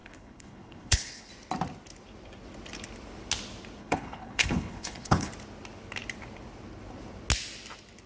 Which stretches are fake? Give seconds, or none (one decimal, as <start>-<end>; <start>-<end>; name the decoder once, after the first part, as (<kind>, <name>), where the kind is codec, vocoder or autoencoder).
0.0-1.3 (codec, HILCodec); 3.8-5.3